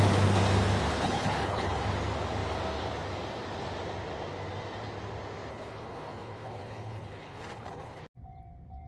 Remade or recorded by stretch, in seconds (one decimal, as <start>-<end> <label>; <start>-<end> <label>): 0.0-0.9 recorded; 0.9-1.8 remade; 1.8-5.5 recorded; 5.5-8.0 remade; 8.0-8.9 recorded